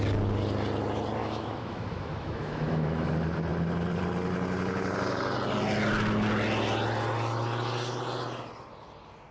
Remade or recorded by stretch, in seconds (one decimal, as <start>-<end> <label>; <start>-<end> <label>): 0.0-1.2 recorded; 1.2-3.1 remade; 3.1-9.3 recorded